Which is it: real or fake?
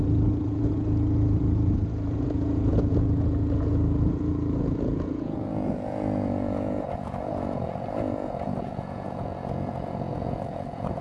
fake